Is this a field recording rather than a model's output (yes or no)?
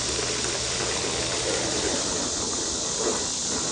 yes